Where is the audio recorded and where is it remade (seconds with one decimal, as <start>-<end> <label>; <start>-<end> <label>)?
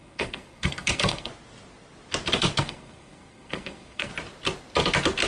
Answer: 0.0-1.3 remade; 1.3-2.6 recorded; 2.6-4.1 remade; 4.1-5.3 recorded